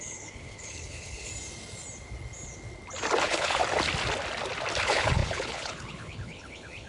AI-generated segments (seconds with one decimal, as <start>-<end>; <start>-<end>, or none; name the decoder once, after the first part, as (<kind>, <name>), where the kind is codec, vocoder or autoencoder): 0.0-1.3 (codec, HILCodec); 3.2-3.6; 4.8-6.9